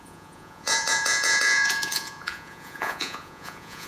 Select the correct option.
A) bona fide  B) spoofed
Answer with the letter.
B